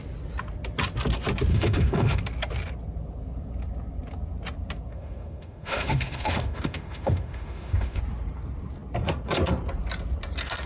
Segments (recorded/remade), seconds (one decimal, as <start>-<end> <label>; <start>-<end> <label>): 0.0-1.5 recorded; 1.5-2.2 remade; 2.2-4.9 recorded; 4.9-8.0 remade; 8.0-10.7 recorded